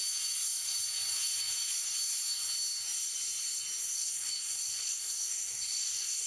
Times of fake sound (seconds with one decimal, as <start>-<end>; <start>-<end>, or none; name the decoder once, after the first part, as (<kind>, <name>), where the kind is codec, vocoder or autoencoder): 3.8-6.3 (codec, SNAC)